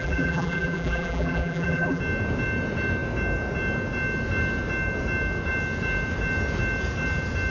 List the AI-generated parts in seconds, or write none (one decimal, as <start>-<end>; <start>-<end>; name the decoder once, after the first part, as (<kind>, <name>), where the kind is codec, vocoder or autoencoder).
0.0-2.0 (vocoder, BigVGAN v2)